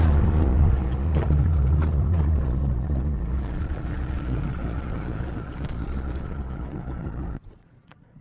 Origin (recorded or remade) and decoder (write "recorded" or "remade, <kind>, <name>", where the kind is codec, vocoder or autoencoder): remade, vocoder, Vocos